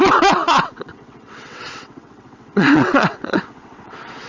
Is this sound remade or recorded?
remade